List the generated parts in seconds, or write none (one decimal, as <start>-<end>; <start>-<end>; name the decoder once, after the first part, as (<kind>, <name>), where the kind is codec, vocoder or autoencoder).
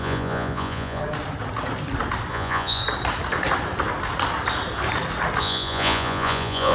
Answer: 0.0-1.0 (vocoder, Vocos); 2.3-2.8; 5.4-6.7